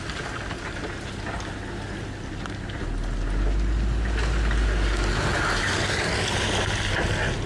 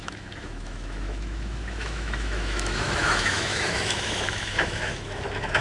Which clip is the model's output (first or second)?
second